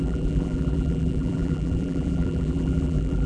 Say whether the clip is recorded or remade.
remade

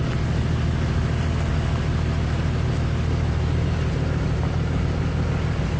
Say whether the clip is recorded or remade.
recorded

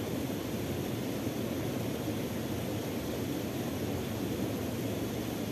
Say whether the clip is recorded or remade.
recorded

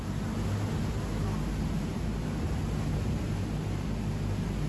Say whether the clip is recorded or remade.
recorded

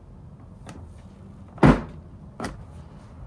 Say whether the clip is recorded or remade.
recorded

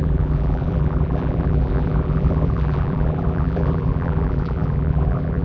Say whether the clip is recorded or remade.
remade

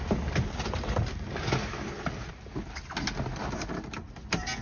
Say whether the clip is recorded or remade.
recorded